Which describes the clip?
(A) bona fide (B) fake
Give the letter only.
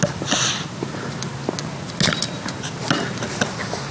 A